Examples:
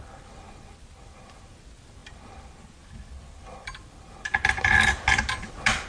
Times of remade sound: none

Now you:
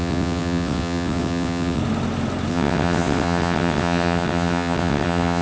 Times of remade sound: 0.0-1.8 (vocoder, WaveNeXt); 2.5-5.4